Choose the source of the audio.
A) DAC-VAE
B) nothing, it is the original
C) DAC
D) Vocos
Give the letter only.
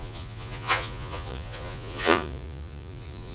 D